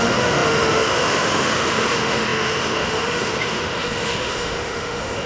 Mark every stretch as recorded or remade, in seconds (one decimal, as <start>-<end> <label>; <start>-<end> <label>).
0.0-5.3 remade